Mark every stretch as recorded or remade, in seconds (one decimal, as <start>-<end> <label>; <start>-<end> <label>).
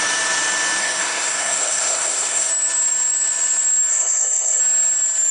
0.0-0.8 recorded; 0.8-2.5 remade; 2.5-3.9 recorded; 3.9-4.6 remade; 4.6-5.3 recorded